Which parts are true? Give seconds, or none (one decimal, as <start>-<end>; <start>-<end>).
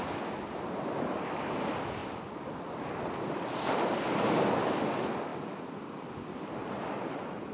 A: 0.0-7.5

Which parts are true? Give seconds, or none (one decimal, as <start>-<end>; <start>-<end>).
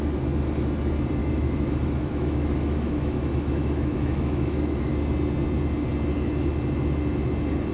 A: 0.0-1.2; 4.9-7.7